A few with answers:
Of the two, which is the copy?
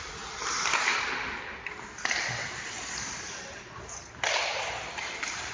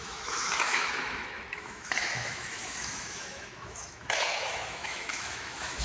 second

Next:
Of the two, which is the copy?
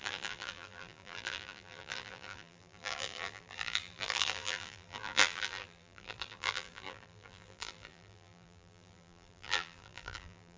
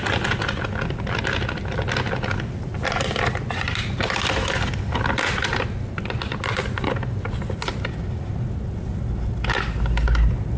first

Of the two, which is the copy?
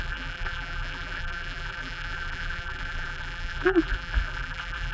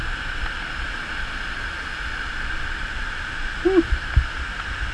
first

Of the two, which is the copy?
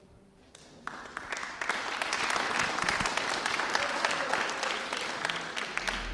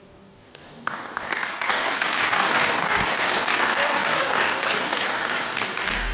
second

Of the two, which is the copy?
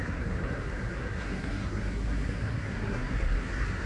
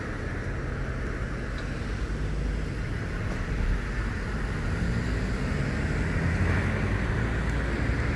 first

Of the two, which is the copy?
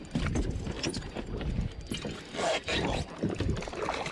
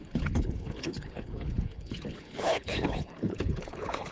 second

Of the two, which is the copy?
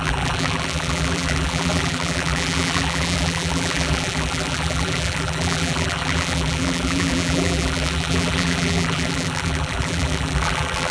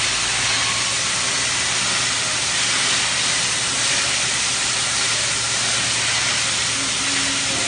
first